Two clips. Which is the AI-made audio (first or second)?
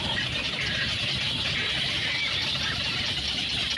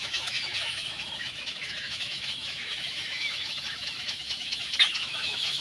second